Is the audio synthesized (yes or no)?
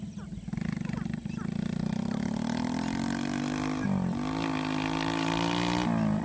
no